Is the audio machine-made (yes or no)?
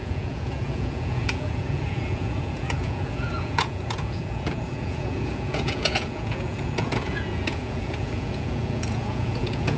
yes